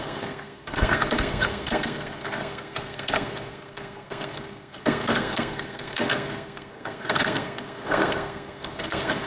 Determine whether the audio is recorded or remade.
remade